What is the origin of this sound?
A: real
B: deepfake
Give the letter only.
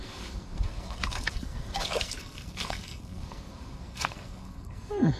B